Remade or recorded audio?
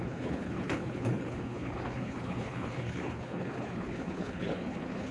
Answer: remade